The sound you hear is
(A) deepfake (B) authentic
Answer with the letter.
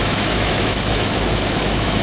A